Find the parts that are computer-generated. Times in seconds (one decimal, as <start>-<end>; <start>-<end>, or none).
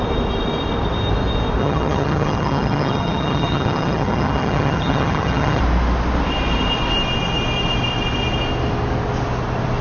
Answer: 1.6-5.6